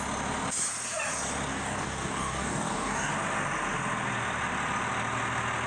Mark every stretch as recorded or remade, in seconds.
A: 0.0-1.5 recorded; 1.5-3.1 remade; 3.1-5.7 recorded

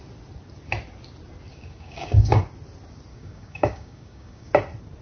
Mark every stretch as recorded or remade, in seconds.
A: 0.0-1.5 recorded; 1.5-2.4 remade; 2.4-3.1 recorded; 3.1-4.5 remade; 4.5-5.0 recorded

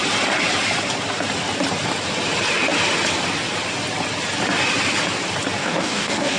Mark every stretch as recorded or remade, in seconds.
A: 0.0-5.6 recorded; 5.6-6.4 remade